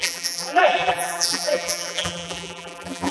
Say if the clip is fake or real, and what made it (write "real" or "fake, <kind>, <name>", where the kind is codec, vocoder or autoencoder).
fake, vocoder, BigVGAN v2